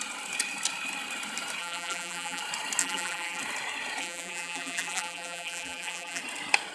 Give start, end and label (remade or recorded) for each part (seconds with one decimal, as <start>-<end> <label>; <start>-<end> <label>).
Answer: 0.0-1.6 recorded; 1.6-2.4 remade; 2.4-2.8 recorded; 2.8-3.4 remade; 3.4-4.0 recorded; 4.0-6.2 remade; 6.2-6.7 recorded